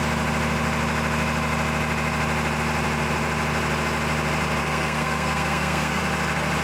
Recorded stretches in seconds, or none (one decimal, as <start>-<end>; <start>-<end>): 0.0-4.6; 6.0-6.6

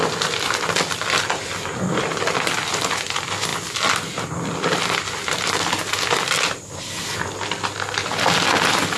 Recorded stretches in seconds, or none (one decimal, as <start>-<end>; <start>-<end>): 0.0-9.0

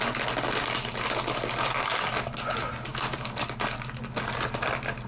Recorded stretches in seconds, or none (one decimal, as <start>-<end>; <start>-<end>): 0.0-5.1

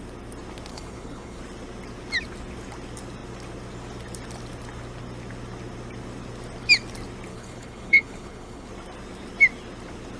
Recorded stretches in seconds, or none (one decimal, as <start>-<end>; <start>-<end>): 0.0-0.7; 1.4-7.3; 8.7-10.2

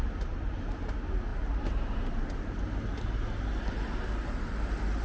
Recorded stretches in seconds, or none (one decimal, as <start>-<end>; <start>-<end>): 0.0-5.0

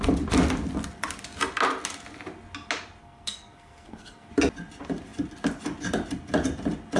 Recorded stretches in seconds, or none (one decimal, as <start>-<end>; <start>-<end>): 0.0-3.0; 4.3-7.0

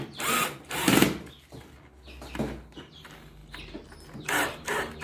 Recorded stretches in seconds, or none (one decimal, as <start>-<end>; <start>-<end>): 0.0-5.0

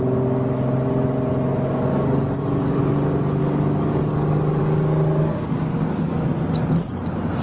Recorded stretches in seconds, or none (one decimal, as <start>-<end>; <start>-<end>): 0.0-1.9; 2.8-3.4; 4.6-5.2; 6.1-7.4